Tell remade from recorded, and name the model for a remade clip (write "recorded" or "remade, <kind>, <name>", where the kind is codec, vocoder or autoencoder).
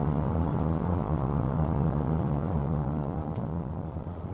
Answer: remade, vocoder, Vocos